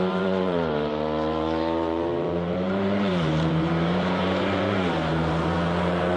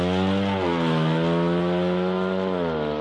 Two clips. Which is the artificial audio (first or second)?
first